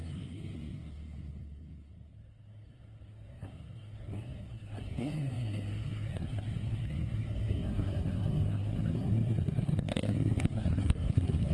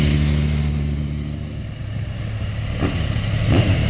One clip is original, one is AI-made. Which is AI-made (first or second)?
first